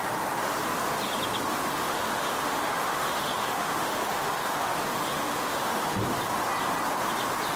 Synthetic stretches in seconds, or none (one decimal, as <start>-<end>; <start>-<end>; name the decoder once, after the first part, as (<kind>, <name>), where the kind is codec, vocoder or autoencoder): 1.7-6.0 (autoencoder, DAC-VAE)